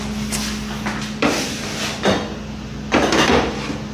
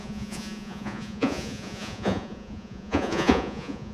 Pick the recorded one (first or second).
first